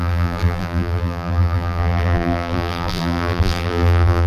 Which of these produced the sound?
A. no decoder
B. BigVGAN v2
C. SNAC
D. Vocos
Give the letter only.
B